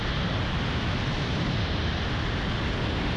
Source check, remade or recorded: recorded